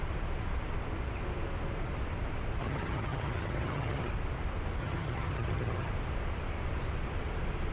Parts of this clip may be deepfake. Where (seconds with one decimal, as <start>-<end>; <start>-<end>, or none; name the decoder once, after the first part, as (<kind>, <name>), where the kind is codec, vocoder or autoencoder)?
2.6-4.1 (vocoder, HiFi-GAN); 4.8-5.9